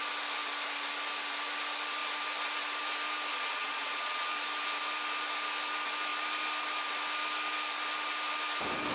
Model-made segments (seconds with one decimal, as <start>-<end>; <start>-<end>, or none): 3.3-4.3